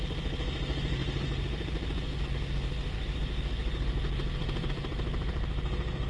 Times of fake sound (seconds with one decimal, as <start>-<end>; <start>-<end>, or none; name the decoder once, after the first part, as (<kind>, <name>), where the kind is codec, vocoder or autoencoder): none